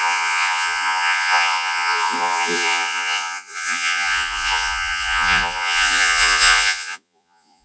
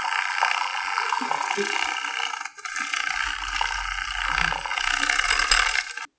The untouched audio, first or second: second